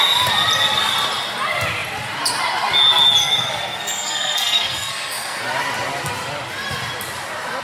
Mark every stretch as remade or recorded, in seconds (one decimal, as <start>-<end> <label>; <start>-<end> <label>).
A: 0.0-3.2 recorded; 3.2-5.4 remade; 5.4-7.6 recorded